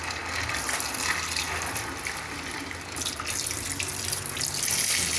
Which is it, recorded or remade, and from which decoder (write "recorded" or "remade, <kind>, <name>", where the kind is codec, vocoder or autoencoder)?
recorded